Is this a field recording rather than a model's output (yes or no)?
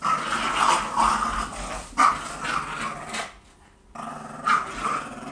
yes